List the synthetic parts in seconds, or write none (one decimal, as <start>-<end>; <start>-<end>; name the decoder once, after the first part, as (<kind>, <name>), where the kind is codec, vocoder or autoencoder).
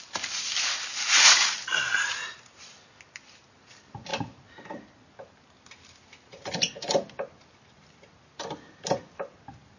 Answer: none